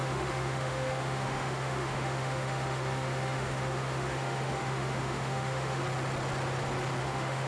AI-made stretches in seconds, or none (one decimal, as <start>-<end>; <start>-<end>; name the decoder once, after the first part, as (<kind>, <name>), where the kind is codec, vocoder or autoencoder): 0.0-5.8 (autoencoder, DAC-VAE); 7.0-7.5